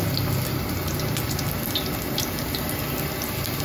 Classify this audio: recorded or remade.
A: recorded